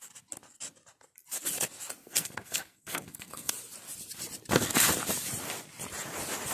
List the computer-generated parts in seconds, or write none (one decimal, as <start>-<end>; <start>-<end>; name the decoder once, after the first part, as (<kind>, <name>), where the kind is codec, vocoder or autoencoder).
2.0-3.5 (codec, SNAC)